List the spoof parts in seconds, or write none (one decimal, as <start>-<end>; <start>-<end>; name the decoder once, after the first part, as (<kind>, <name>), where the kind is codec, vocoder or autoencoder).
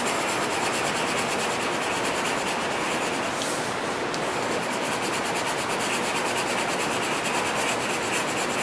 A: 4.3-4.9 (codec, DAC)